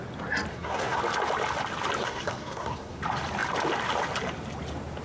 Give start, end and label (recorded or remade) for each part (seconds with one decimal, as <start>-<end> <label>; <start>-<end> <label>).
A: 0.0-0.5 recorded; 0.5-1.0 remade; 1.0-2.0 recorded; 2.0-3.0 remade; 3.0-5.0 recorded